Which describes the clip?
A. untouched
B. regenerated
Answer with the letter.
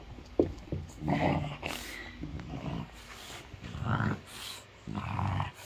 B